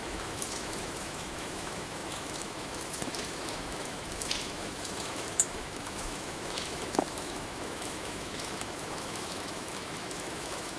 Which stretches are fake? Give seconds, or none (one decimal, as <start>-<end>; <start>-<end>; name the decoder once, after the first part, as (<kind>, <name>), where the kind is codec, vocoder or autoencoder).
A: 0.0-10.8 (autoencoder, DAC-VAE)